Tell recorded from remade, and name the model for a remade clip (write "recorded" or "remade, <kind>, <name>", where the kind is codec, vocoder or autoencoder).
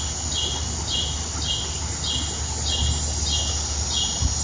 recorded